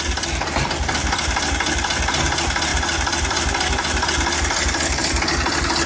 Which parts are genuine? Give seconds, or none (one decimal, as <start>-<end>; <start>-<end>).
0.0-5.9